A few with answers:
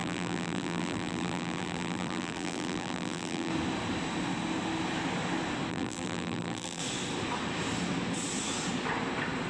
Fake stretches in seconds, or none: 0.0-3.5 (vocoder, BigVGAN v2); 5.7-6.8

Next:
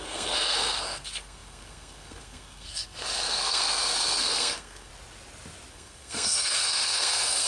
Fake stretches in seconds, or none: 0.0-4.9 (codec, SNAC); 5.7-7.5

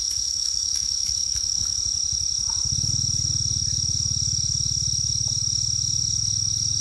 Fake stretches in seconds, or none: 0.0-1.8 (autoencoder, DAC-VAE)

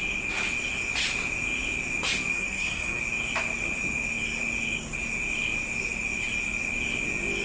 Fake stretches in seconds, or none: 2.3-3.0 (codec, SNAC)

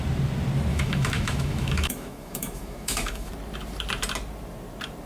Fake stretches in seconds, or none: 0.7-3.3 (autoencoder, DAC-VAE)